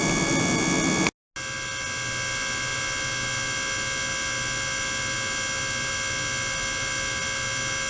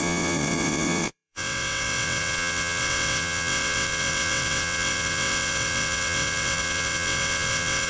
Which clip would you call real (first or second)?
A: first